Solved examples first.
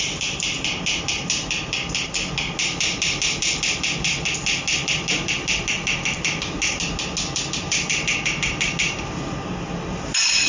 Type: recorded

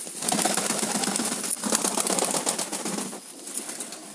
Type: recorded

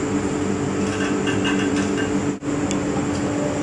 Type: recorded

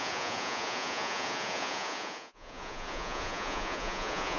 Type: remade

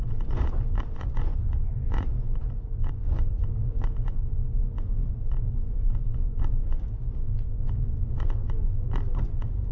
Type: remade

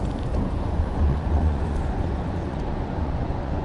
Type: remade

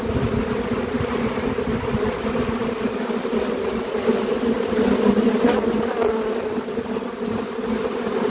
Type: recorded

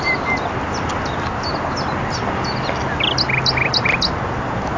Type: recorded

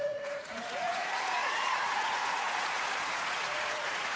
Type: remade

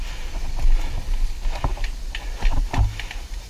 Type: recorded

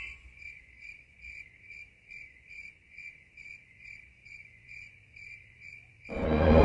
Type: remade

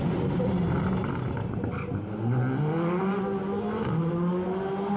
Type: recorded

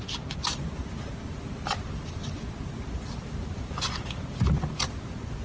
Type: recorded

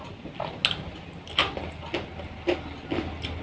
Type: recorded